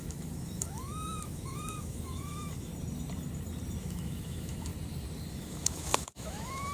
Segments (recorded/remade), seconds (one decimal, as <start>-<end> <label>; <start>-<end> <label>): 0.0-2.7 remade; 2.7-3.8 recorded; 3.8-4.7 remade; 4.7-5.3 recorded; 5.3-6.7 remade